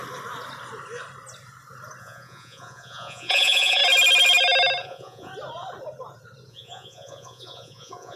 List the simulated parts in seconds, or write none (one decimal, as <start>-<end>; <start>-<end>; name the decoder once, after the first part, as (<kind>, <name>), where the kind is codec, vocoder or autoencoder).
2.0-3.8 (vocoder, Vocos); 4.8-5.3; 6.5-8.2